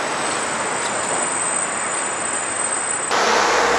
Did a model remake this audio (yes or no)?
no